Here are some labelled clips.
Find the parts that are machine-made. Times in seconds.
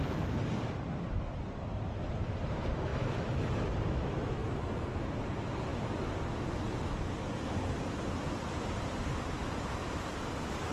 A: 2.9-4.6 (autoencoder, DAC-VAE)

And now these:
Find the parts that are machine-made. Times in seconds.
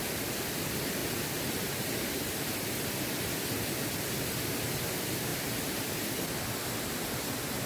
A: 1.0-3.7 (vocoder, BigVGAN v2)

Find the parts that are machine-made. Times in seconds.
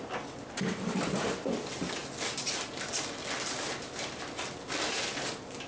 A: none